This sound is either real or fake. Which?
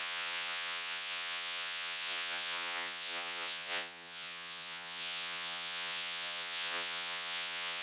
fake